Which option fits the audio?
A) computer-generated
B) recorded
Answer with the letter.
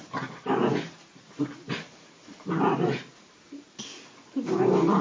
B